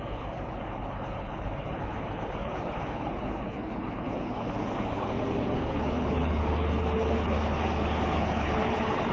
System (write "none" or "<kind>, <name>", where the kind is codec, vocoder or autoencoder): codec, HILCodec